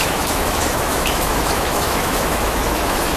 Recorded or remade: remade